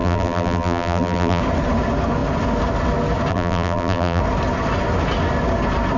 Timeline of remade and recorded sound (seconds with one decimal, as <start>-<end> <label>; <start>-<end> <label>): 0.0-1.4 remade; 1.4-3.3 recorded; 3.3-4.2 remade; 4.2-6.0 recorded